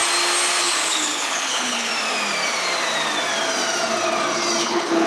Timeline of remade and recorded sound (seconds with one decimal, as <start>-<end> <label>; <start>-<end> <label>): 0.0-0.6 recorded; 0.6-1.9 remade; 1.9-4.6 recorded; 4.6-5.1 remade